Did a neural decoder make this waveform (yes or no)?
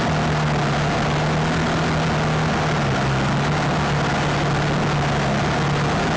no